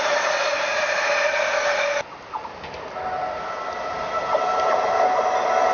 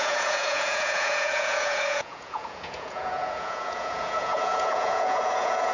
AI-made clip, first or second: second